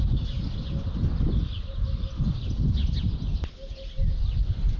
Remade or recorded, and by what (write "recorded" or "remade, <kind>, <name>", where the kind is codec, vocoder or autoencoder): recorded